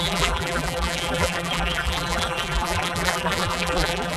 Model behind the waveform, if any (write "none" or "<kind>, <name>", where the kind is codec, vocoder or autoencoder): vocoder, BigVGAN v2